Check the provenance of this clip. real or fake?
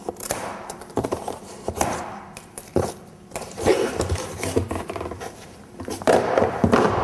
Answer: fake